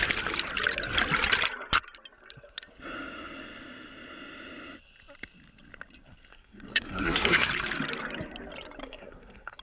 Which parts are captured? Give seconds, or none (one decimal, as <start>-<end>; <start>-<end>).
0.0-6.3; 7.5-8.8